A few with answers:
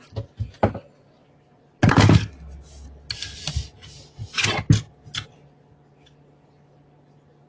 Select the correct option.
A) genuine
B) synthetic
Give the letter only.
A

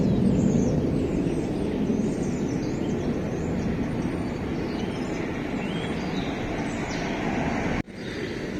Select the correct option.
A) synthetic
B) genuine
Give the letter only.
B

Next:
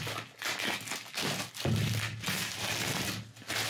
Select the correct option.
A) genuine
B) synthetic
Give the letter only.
A